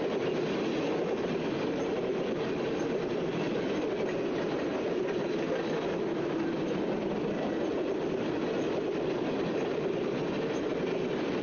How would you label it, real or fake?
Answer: real